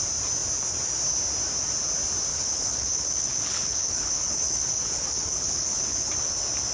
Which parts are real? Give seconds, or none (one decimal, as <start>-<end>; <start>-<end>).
0.0-2.3; 6.3-6.7